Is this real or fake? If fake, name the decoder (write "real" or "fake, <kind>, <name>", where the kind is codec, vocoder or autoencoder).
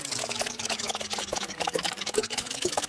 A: fake, codec, DAC